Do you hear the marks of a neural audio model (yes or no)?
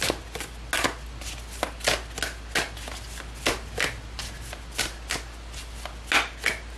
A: no